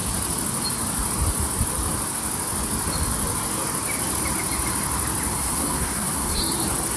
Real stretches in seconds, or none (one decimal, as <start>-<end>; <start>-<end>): 0.0-5.3; 6.4-7.0